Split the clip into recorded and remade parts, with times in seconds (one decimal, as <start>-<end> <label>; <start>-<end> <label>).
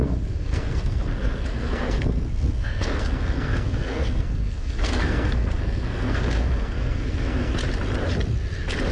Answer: 0.0-7.6 remade; 7.6-8.9 recorded